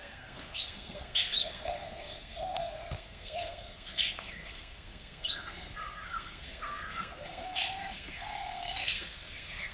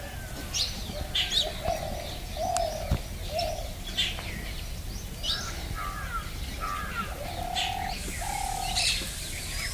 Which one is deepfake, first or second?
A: first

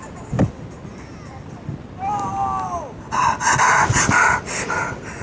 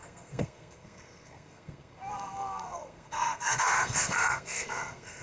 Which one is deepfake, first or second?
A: second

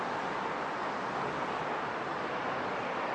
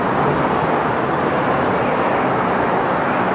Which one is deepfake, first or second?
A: first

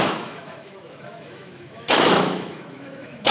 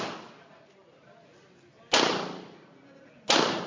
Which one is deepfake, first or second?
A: first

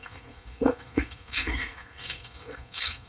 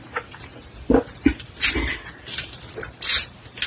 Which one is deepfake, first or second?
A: first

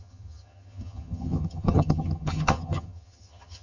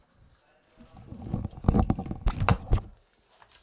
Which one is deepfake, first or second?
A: first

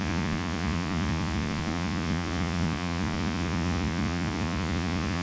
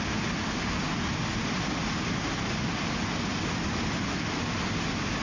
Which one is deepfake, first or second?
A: first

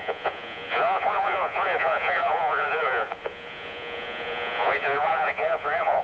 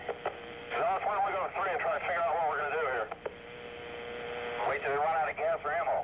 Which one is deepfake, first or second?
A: first